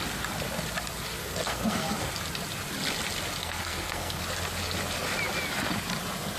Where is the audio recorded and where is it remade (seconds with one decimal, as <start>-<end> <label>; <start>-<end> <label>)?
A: 0.0-1.2 recorded; 1.2-2.1 remade; 2.1-3.4 recorded; 3.4-4.2 remade; 4.2-6.4 recorded